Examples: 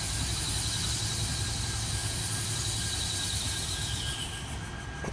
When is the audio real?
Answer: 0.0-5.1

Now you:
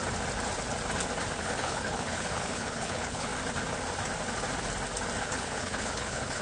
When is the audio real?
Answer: 0.0-1.4; 3.3-5.2